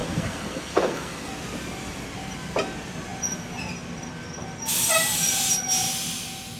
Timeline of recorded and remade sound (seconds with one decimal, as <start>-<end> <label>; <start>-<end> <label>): 0.0-1.3 remade; 1.3-6.6 recorded